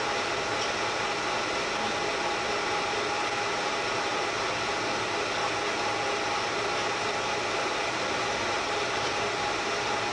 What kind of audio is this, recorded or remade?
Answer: recorded